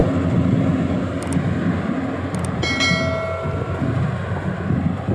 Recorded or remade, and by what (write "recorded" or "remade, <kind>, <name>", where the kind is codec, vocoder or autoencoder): recorded